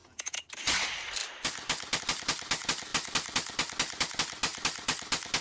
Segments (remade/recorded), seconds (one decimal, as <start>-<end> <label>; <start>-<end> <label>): 0.0-0.5 remade; 0.5-5.4 recorded